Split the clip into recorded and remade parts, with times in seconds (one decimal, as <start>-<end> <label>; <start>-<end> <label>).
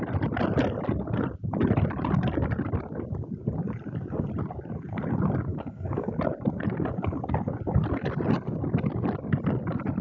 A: 0.0-5.5 recorded; 5.5-6.1 remade; 6.1-10.0 recorded